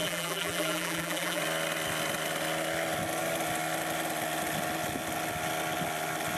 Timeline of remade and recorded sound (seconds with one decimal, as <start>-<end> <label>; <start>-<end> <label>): 0.0-1.4 remade; 1.4-6.4 recorded